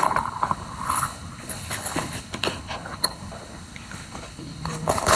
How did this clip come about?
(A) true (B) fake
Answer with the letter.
B